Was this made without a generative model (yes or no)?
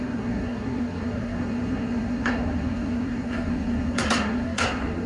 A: no